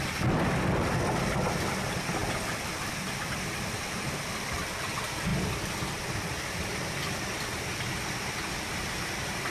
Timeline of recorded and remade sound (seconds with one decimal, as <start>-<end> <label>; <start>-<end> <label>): 0.0-9.5 recorded